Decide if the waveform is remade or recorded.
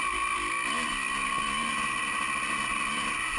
recorded